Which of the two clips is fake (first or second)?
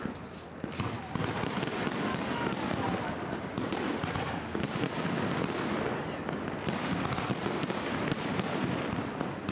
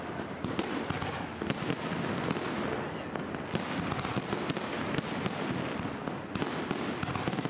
first